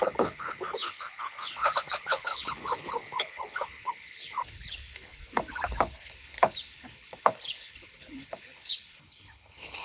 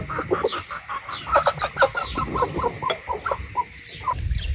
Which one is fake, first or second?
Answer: first